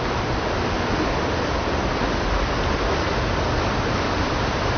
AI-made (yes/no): no